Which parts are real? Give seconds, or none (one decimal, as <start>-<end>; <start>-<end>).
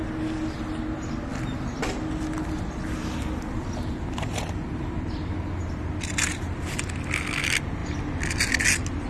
0.0-9.1